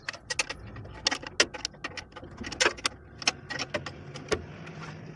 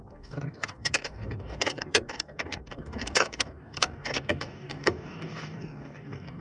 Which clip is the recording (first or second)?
first